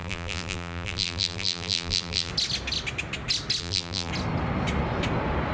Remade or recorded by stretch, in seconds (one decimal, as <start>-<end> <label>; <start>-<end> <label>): 0.0-2.3 remade; 2.3-3.6 recorded; 3.6-4.1 remade; 4.1-5.5 recorded